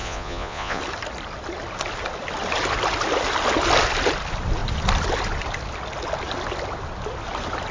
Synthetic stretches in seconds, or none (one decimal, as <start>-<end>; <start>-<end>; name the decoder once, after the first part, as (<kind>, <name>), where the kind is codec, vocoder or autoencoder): 0.0-0.8 (vocoder, Vocos)

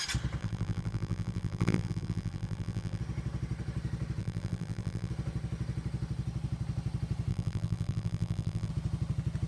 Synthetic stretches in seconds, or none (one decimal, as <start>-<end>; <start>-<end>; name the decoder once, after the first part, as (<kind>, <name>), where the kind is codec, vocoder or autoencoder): 0.4-3.0 (vocoder, BigVGAN v2); 4.2-5.1; 7.3-8.7

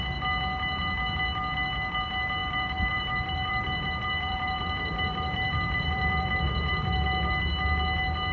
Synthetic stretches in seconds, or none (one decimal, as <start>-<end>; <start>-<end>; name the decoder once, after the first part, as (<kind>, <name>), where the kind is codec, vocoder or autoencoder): 2.4-7.4 (vocoder, BigVGAN v2)

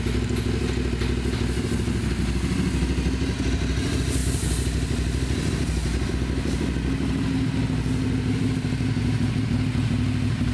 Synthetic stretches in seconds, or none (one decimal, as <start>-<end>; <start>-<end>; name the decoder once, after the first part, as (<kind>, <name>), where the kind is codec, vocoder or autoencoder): none

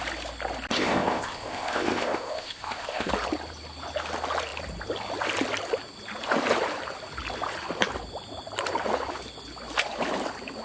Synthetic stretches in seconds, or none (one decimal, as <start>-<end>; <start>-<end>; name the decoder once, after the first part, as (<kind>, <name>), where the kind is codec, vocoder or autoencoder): 0.7-3.1 (codec, ZipCodec)

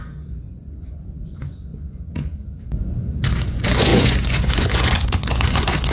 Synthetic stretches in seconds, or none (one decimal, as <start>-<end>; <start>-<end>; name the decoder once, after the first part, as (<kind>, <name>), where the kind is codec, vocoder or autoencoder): 0.0-5.9 (vocoder, Vocos)

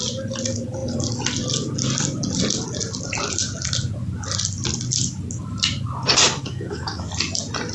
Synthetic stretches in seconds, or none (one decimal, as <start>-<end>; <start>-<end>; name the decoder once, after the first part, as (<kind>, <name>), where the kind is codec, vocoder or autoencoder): 6.4-7.1 (autoencoder, DAC-VAE)